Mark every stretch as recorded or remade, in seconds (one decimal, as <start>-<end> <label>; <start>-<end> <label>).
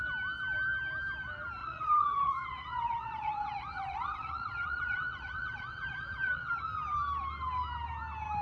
0.0-1.6 recorded; 1.6-6.6 remade; 6.6-8.4 recorded